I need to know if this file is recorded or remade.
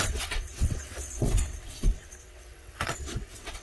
remade